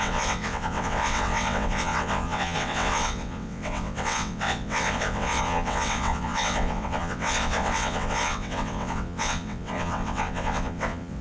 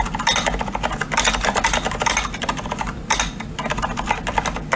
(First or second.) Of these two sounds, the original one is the second